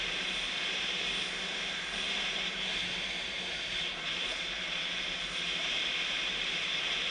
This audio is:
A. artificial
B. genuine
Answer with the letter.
A